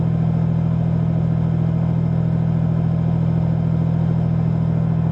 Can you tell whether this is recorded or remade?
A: recorded